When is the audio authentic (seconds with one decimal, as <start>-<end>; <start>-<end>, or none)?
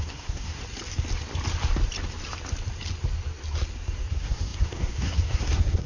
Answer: 0.6-4.1